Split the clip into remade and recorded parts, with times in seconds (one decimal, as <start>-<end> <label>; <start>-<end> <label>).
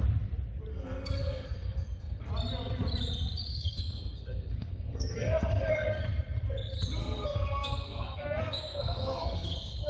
0.0-0.7 recorded; 0.7-2.3 remade; 2.3-3.5 recorded; 3.5-6.0 remade; 6.0-7.0 recorded; 7.0-9.9 remade